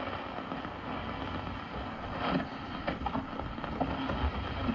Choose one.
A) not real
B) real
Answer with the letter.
B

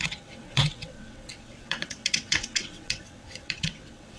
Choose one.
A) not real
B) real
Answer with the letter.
A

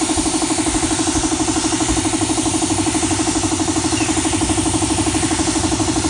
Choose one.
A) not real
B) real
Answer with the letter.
B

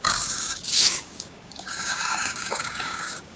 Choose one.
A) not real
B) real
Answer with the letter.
A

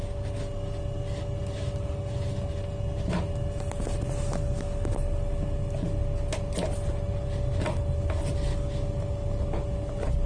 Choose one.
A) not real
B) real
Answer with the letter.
B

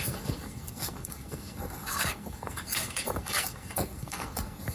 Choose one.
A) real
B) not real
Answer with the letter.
B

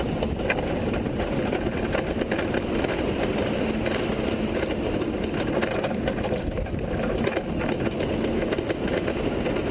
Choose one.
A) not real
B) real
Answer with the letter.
B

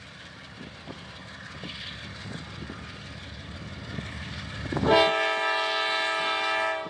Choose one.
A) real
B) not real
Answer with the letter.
A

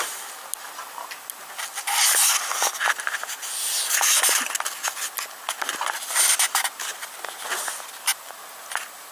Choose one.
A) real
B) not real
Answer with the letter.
A